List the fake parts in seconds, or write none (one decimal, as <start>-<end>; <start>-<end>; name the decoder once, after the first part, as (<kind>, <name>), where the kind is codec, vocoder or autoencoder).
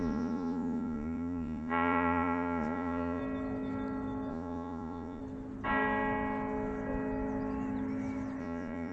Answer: 0.0-3.2 (vocoder, Vocos); 4.3-5.2; 8.4-8.9